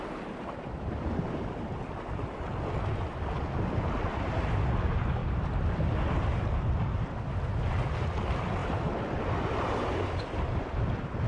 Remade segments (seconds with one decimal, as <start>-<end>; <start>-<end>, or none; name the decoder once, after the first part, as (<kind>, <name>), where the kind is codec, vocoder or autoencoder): none